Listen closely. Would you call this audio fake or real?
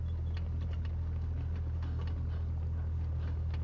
real